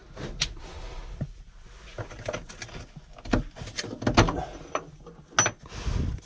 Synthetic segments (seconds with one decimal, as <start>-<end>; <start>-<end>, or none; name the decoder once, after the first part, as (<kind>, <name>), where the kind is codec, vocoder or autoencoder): none